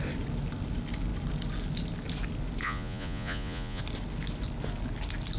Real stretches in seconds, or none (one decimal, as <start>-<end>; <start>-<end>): 0.0-2.6; 3.8-5.4